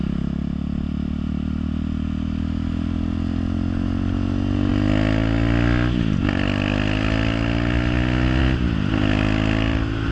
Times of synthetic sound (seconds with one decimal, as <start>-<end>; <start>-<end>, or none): none